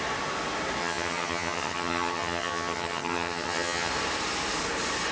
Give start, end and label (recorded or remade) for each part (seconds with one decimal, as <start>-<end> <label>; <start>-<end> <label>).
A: 0.0-0.8 recorded; 0.8-3.9 remade; 3.9-5.1 recorded